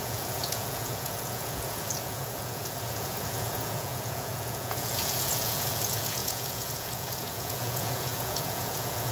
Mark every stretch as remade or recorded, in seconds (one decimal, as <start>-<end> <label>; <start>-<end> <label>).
0.0-9.1 remade